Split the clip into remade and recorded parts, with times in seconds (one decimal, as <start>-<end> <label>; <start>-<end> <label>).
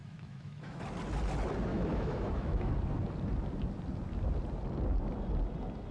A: 0.0-0.8 remade; 0.8-1.7 recorded; 1.7-2.7 remade; 2.7-5.9 recorded